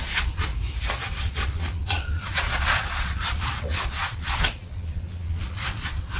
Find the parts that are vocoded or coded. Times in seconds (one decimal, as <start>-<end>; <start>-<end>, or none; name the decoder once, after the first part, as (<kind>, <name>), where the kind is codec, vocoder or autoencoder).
0.0-0.5 (vocoder, Vocos); 1.1-6.2